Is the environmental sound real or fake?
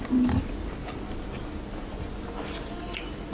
real